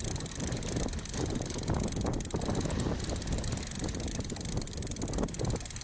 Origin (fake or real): real